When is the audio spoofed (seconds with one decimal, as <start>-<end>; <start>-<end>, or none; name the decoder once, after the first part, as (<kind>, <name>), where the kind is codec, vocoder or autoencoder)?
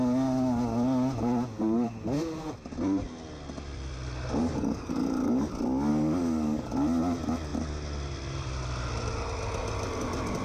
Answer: 4.4-5.5 (codec, DAC); 5.9-6.7